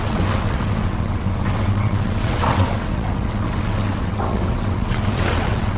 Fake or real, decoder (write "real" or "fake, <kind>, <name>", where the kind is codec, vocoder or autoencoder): fake, vocoder, WaveNeXt